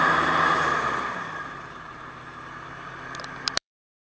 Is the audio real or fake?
fake